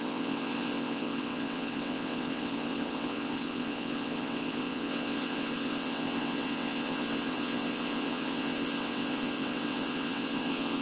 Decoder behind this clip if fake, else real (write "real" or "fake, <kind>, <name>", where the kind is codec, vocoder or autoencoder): fake, vocoder, WaveNeXt